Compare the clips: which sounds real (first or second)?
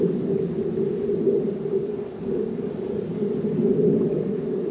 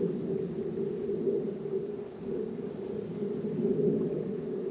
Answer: second